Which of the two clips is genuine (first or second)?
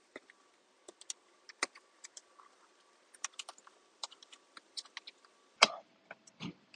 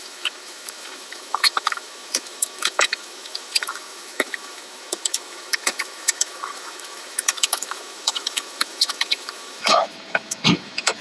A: first